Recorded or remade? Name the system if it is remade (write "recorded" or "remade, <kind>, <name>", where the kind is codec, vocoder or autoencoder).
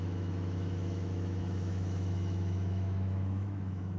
remade, autoencoder, DAC-VAE